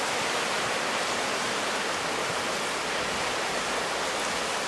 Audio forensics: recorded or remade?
recorded